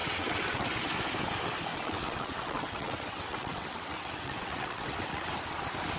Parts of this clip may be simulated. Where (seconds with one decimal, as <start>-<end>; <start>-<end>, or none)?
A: 0.0-0.8; 1.7-5.3

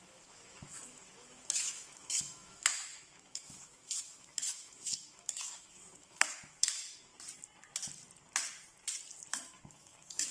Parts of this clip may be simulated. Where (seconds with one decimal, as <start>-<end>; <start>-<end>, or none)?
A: 0.0-7.1; 9.3-10.3

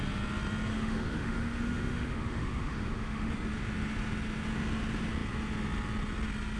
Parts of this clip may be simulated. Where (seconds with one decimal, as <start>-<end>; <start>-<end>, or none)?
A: 0.7-3.3

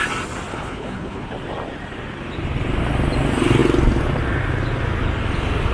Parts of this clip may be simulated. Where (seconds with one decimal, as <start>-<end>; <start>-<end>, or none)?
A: 0.5-1.3

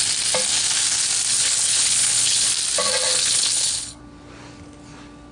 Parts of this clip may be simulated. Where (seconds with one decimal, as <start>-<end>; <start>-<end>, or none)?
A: 1.3-2.5; 3.1-4.0

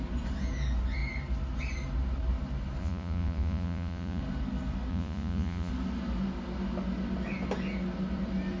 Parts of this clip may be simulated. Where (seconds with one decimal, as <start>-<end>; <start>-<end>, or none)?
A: 2.8-4.2; 4.9-5.7

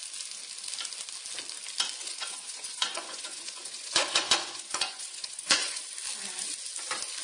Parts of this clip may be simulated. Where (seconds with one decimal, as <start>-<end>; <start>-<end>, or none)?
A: 2.0-5.8

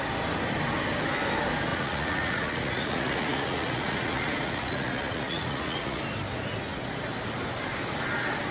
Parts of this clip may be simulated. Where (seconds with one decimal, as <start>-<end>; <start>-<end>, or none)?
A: 1.7-6.0